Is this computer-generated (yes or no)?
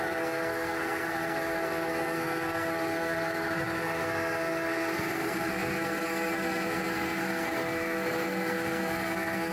yes